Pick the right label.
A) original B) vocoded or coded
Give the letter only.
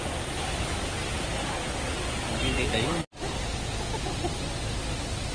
A